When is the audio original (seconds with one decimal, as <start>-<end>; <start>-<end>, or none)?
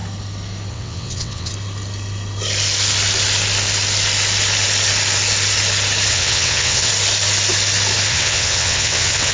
0.0-0.7; 1.5-6.1; 6.9-8.1